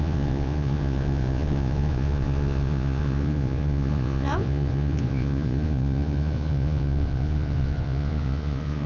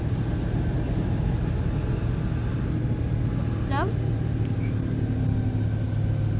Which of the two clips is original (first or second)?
second